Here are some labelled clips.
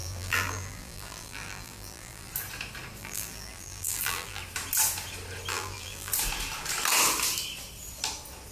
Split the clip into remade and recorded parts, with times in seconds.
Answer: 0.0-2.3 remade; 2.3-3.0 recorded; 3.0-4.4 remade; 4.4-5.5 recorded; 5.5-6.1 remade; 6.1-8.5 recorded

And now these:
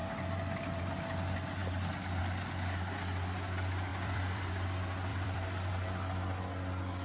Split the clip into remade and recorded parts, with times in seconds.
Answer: 0.0-3.9 recorded; 3.9-4.5 remade; 4.5-5.1 recorded; 5.1-5.7 remade; 5.7-7.0 recorded

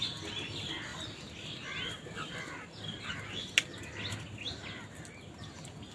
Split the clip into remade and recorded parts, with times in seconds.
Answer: 0.0-5.9 recorded

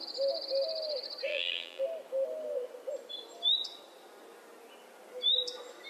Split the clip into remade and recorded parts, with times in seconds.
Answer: 0.0-1.3 recorded; 1.3-1.8 remade; 1.8-5.9 recorded

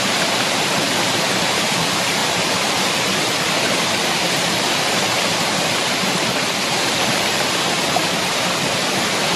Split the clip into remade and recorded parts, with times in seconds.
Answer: 0.0-9.4 remade

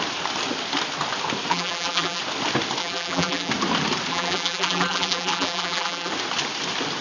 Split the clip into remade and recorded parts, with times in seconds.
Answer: 0.0-1.5 recorded; 1.5-2.2 remade; 2.2-2.8 recorded; 2.8-3.5 remade; 3.5-4.1 recorded; 4.1-6.1 remade; 6.1-7.0 recorded